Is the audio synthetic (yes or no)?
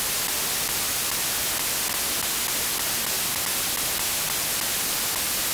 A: no